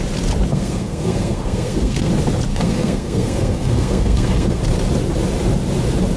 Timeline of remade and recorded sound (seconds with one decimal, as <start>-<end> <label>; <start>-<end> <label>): 0.0-0.5 recorded; 0.5-2.1 remade; 2.1-2.5 recorded; 2.5-4.6 remade; 4.6-6.2 recorded